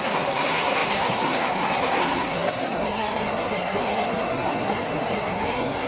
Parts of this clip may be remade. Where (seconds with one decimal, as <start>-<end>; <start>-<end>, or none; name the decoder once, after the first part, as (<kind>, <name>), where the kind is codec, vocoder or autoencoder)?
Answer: 0.0-5.9 (codec, SNAC)